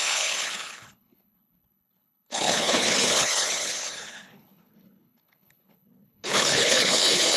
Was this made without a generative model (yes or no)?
no